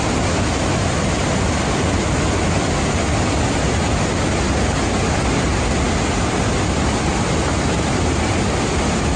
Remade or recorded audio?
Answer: recorded